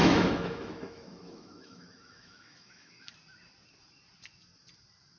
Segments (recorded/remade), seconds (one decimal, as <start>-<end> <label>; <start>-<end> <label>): 0.0-3.1 remade; 3.1-5.2 recorded